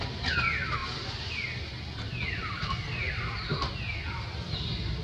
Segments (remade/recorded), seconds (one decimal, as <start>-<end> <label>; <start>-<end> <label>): 0.0-5.0 recorded

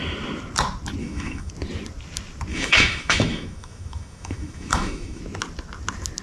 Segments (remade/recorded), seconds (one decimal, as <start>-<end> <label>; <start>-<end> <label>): 0.0-1.0 recorded; 1.0-1.5 remade; 1.5-2.5 recorded; 2.5-5.2 remade; 5.2-6.2 recorded

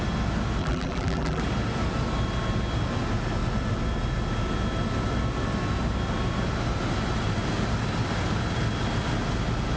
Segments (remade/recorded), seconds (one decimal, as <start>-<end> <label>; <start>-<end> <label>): 0.0-0.6 recorded; 0.6-1.4 remade; 1.4-9.8 recorded

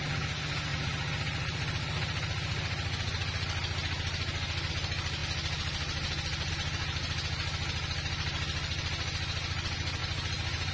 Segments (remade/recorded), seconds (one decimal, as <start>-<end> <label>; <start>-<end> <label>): 0.0-10.0 recorded; 10.0-10.7 remade

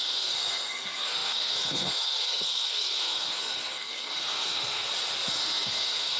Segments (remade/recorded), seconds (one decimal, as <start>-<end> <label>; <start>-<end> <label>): 0.0-4.9 remade; 4.9-5.4 recorded; 5.4-6.2 remade

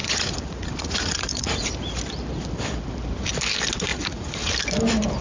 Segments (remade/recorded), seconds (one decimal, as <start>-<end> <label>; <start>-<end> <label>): 0.0-1.7 remade; 1.7-3.9 recorded; 3.9-4.5 remade; 4.5-5.2 recorded